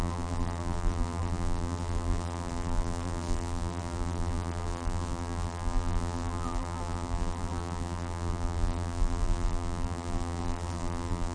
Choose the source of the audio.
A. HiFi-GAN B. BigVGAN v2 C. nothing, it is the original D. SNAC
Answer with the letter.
B